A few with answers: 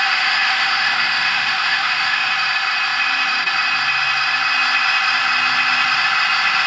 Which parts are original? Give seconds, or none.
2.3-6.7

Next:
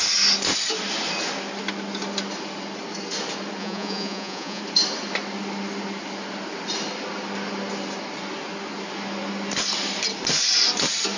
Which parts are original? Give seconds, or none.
0.0-3.6; 4.6-11.2

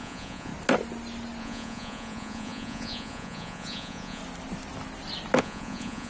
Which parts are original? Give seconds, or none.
0.5-1.4; 4.2-5.4

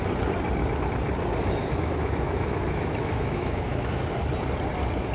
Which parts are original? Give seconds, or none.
0.0-1.6; 4.0-5.1

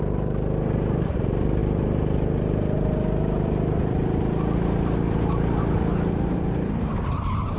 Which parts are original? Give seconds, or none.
0.0-7.6

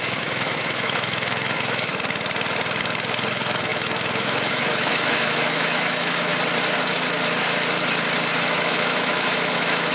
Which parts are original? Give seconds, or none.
1.9-3.3; 6.3-8.5